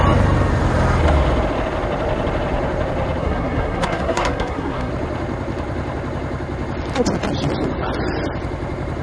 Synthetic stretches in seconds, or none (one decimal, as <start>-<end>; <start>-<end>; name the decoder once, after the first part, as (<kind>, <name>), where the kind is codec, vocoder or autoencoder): 3.2-4.9 (codec, SNAC)